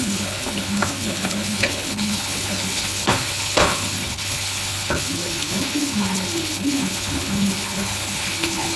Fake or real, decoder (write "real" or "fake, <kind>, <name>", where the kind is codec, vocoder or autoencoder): fake, codec, HILCodec